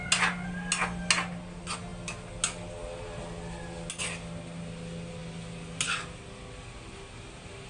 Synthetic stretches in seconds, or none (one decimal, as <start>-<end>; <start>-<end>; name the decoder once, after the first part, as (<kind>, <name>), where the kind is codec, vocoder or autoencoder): none

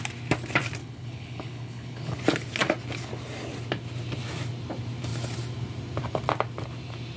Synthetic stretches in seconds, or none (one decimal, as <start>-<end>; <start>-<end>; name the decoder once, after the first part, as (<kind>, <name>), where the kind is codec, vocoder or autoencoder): 0.8-2.2 (codec, HILCodec)

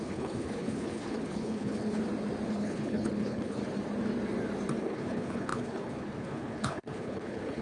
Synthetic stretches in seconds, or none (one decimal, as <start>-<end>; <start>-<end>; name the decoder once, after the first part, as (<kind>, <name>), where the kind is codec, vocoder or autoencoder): 0.0-2.0 (codec, HILCodec); 2.5-3.6; 4.8-7.6

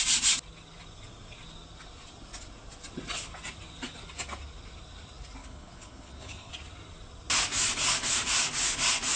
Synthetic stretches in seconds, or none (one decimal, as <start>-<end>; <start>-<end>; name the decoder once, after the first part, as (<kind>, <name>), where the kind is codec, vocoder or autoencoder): 5.4-6.5 (codec, HILCodec)

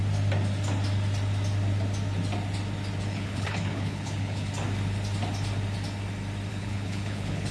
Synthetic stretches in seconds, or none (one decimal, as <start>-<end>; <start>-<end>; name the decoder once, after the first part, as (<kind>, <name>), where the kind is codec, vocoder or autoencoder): 3.1-4.5 (codec, HILCodec); 6.5-7.5